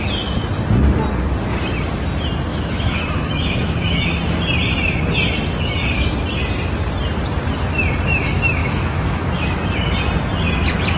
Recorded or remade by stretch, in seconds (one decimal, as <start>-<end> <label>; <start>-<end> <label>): 0.0-2.5 recorded; 2.5-4.2 remade; 4.2-8.6 recorded; 8.6-9.6 remade; 9.6-11.0 recorded